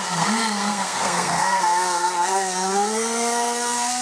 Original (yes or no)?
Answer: no